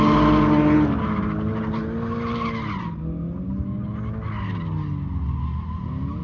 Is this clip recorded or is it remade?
recorded